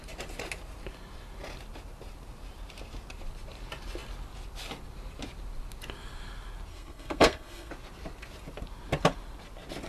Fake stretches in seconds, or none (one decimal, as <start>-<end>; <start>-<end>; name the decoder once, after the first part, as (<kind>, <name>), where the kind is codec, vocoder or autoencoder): 6.7-7.7 (codec, SNAC)